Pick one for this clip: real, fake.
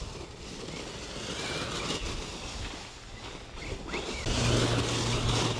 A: real